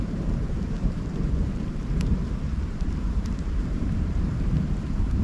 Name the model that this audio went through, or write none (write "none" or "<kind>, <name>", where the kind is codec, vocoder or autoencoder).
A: vocoder, BigVGAN v2